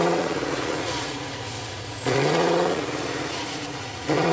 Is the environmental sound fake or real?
fake